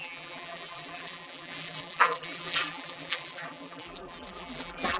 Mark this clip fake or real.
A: fake